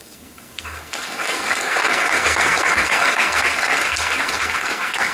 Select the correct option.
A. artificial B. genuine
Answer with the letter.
A